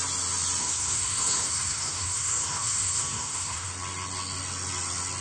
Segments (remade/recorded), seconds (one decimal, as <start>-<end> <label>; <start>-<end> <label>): 0.0-0.6 recorded; 0.6-3.7 remade; 3.7-5.2 recorded